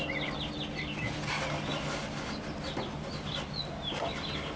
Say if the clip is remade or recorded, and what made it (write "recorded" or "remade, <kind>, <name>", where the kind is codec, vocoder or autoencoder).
recorded